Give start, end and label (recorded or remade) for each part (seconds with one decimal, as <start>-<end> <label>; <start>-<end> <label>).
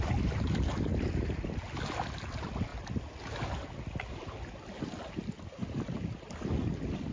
0.0-7.1 recorded